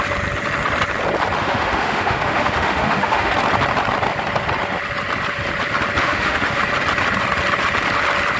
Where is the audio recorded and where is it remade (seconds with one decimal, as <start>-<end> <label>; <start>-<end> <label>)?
0.0-1.4 recorded; 1.4-3.3 remade; 3.3-6.0 recorded; 6.0-6.6 remade; 6.6-8.4 recorded